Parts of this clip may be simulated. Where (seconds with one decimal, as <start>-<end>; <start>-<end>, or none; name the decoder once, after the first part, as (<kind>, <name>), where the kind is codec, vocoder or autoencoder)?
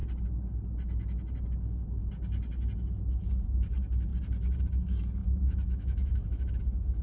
5.2-6.6 (autoencoder, DAC-VAE)